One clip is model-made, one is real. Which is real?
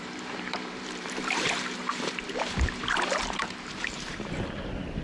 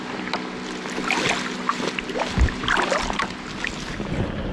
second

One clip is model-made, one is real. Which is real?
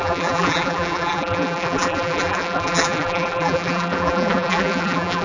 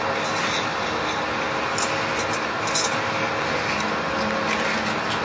second